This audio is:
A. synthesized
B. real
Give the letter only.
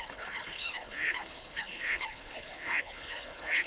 A